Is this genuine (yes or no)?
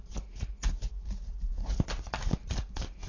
yes